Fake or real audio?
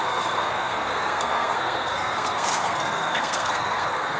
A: fake